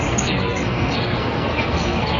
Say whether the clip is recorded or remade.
remade